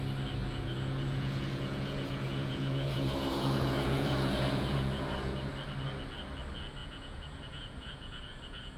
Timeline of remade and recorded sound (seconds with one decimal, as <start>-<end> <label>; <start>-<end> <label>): 0.0-0.4 recorded; 0.4-5.5 remade; 5.5-6.8 recorded; 6.8-8.8 remade